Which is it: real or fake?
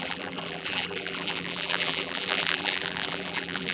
fake